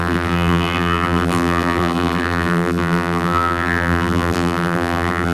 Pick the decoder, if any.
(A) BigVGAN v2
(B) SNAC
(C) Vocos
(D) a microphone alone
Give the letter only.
A